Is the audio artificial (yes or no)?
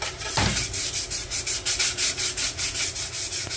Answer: no